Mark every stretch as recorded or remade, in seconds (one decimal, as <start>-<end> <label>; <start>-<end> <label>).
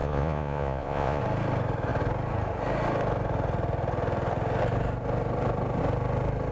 0.0-1.2 remade; 1.2-6.5 recorded